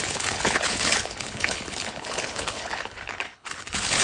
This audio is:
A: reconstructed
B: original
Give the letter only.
A